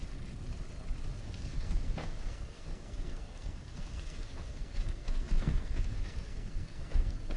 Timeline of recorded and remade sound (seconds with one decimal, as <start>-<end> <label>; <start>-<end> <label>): 0.0-1.2 recorded; 1.2-7.4 remade